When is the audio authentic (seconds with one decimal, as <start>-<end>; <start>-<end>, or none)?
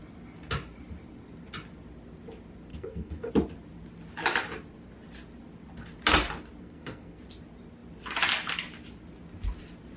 0.0-2.7; 3.3-6.6; 7.2-10.0